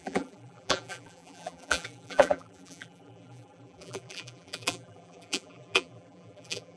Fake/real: fake